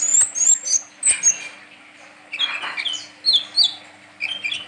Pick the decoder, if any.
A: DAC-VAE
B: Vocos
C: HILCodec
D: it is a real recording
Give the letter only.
D